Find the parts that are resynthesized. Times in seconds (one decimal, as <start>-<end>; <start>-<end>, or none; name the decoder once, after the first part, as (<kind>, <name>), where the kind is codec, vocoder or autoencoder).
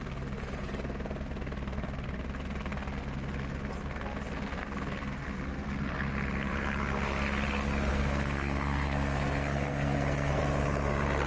7.9-10.4 (codec, SNAC)